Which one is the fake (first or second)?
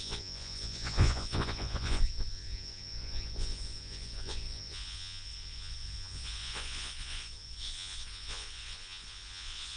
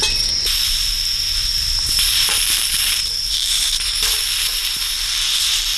first